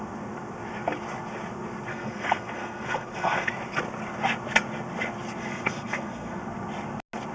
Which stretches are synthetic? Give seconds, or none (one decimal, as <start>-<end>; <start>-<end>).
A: 1.9-3.5; 5.4-6.4